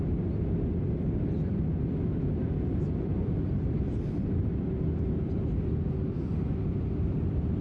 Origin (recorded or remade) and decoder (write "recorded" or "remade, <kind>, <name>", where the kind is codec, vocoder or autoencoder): recorded